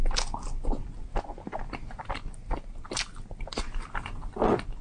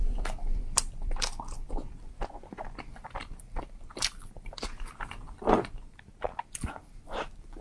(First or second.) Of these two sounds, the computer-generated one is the second